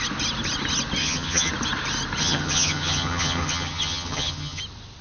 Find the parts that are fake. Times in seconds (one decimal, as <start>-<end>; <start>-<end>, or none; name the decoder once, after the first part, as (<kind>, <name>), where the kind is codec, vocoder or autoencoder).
1.0-1.5 (vocoder, HiFi-GAN); 2.2-4.6